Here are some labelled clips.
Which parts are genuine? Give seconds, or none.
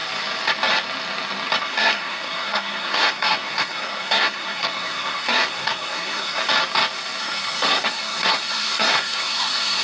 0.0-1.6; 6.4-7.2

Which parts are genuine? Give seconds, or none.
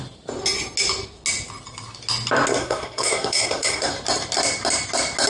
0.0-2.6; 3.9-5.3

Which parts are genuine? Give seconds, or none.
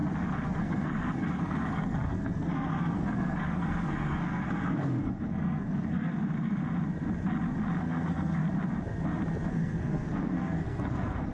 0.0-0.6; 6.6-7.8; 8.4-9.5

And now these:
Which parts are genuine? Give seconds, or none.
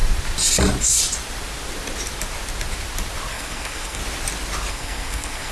0.0-3.3; 4.0-4.7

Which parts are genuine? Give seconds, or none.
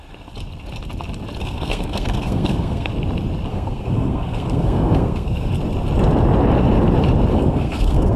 0.0-1.4; 2.9-3.5; 5.5-7.3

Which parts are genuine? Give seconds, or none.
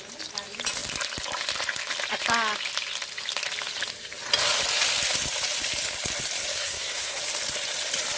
0.0-6.5; 7.2-8.2